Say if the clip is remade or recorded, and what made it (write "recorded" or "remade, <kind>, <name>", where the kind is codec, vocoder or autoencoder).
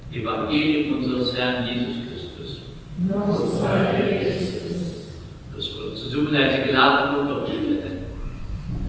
remade, vocoder, Vocos